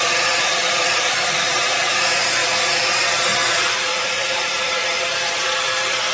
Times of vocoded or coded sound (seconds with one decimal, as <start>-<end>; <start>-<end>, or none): 0.0-2.4; 3.6-4.8; 5.6-6.1